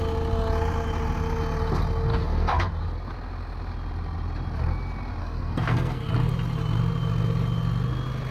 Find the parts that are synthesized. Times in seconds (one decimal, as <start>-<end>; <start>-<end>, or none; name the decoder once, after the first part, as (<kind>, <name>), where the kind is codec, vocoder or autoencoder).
2.1-2.7 (codec, SNAC); 5.2-6.1